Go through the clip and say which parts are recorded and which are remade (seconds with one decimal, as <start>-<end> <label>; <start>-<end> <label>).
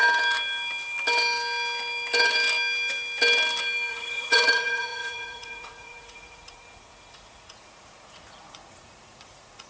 0.0-3.9 recorded; 3.9-9.7 remade